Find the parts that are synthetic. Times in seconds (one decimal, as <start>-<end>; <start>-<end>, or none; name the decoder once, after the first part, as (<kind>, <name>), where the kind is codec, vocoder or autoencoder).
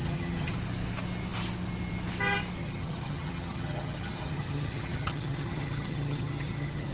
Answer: 0.0-0.5 (vocoder, HiFi-GAN); 2.6-6.9